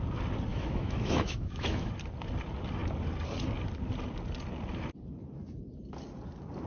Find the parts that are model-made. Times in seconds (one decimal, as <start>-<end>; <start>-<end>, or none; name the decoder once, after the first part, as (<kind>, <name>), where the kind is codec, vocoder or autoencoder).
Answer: 0.5-1.9 (autoencoder, DAC-VAE)